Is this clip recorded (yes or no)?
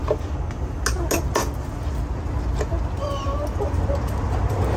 yes